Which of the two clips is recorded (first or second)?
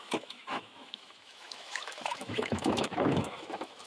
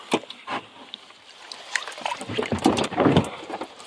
second